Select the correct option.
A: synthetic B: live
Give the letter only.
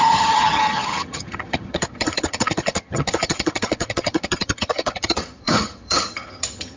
A